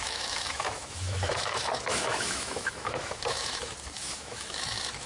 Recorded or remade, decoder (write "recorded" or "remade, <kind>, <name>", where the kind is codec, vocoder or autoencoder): remade, autoencoder, DAC-VAE